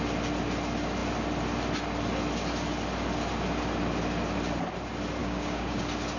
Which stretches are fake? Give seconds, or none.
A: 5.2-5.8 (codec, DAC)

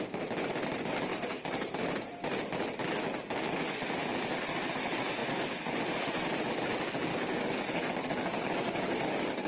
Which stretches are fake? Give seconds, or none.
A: 1.1-1.8 (codec, DAC); 7.1-9.5

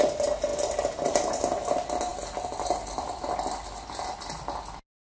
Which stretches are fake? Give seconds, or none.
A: none

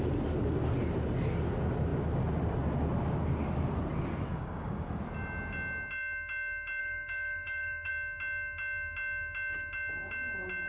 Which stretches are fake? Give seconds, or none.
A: 4.3-5.0 (codec, DAC); 6.8-7.9